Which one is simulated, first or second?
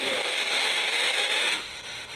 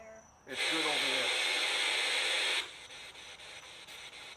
first